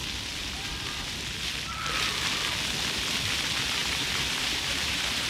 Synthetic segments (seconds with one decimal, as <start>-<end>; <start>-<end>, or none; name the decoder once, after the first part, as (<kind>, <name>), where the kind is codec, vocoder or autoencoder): 3.8-5.3 (vocoder, BigVGAN v2)